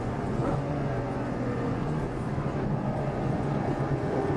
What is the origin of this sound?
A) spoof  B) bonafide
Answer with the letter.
A